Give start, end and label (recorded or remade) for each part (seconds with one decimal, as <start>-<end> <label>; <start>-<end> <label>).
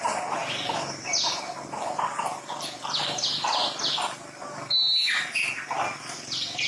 0.0-6.7 recorded